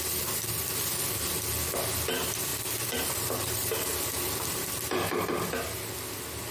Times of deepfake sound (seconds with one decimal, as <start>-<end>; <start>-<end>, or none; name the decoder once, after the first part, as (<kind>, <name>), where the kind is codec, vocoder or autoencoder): 2.5-5.5 (vocoder, BigVGAN v2)